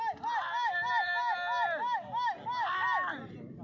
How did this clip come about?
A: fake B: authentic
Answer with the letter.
B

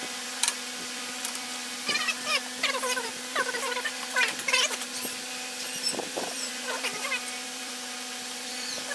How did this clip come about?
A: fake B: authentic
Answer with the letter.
A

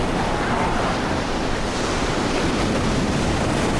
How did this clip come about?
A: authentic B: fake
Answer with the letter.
B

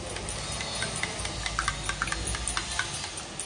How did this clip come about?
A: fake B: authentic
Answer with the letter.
B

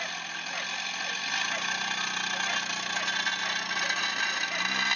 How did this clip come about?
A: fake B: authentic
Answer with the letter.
B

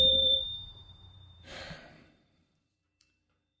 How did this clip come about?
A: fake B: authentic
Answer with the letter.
A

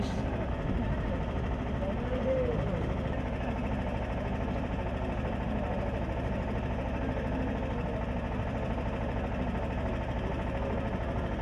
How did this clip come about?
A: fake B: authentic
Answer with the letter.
B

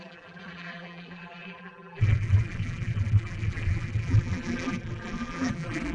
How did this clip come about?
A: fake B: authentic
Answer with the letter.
A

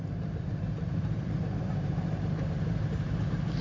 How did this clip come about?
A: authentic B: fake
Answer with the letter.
B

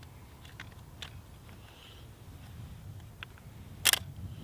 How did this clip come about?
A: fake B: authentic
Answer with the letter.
B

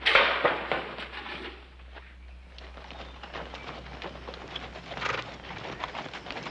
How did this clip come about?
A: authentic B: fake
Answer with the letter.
A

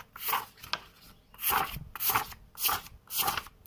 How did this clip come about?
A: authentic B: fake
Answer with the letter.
A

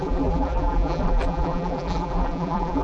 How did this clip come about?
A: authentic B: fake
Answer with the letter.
B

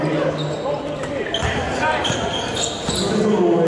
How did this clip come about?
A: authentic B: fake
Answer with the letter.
A